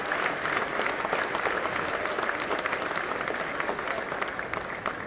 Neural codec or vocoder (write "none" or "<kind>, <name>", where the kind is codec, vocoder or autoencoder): none